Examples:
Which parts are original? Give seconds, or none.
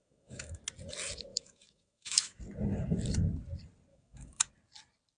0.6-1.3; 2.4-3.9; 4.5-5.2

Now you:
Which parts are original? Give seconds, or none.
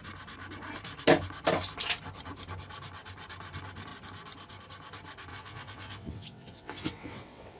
0.0-5.3